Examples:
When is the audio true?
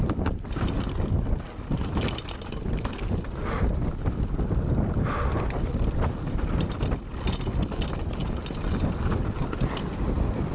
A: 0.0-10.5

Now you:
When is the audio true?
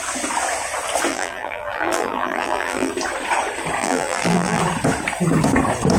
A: 0.0-1.1; 2.9-3.8; 4.6-6.0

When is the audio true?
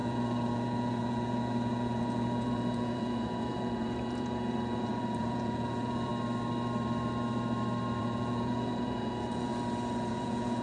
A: 6.1-8.0; 9.5-10.1